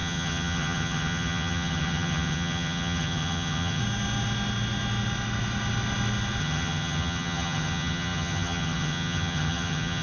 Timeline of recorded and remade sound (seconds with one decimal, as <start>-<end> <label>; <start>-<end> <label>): 0.0-3.8 remade; 3.8-6.4 recorded; 6.4-10.0 remade